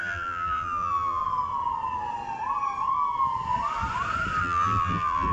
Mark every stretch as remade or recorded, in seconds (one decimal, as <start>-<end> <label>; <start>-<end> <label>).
0.0-1.2 remade; 1.2-4.4 recorded; 4.4-5.3 remade